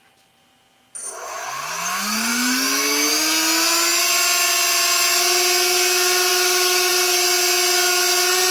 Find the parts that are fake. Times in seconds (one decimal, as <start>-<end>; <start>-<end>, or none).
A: 2.3-3.1; 6.3-6.9